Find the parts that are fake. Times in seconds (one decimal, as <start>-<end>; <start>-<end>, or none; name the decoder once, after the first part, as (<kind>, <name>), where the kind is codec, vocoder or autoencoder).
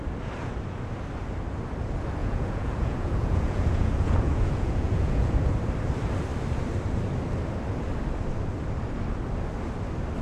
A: 2.2-5.3 (vocoder, Vocos)